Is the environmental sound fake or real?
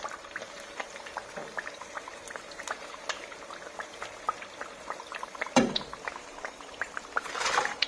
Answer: fake